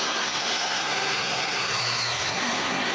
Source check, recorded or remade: remade